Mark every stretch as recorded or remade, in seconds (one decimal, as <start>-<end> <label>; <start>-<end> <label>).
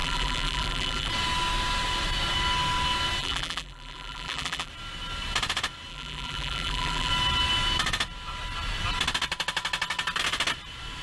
0.0-1.1 remade; 1.1-3.2 recorded; 3.2-4.7 remade; 4.7-5.9 recorded; 5.9-7.1 remade; 7.1-11.0 recorded